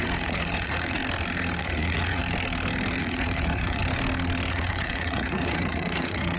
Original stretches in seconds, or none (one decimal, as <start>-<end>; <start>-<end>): 1.0-1.6; 2.2-3.0; 3.8-4.5